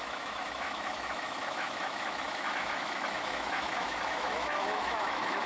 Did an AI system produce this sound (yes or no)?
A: yes